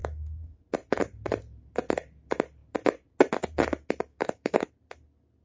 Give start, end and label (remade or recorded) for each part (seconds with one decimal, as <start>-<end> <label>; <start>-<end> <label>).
0.0-0.6 remade; 0.6-4.1 recorded; 4.1-4.7 remade; 4.7-5.4 recorded